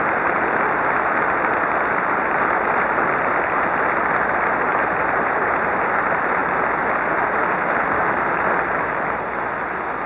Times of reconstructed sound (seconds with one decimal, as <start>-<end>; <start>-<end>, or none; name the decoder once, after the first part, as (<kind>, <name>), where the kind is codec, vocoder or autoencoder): 4.7-5.8 (vocoder, BigVGAN v2)